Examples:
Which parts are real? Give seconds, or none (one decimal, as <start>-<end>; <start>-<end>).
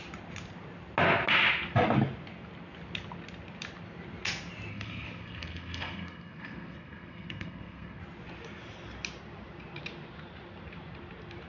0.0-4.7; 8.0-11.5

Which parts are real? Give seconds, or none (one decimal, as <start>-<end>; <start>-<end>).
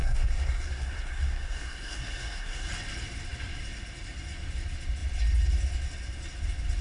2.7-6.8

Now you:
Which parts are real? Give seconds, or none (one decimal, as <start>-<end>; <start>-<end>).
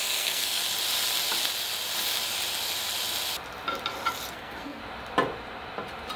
0.6-4.3; 4.8-6.2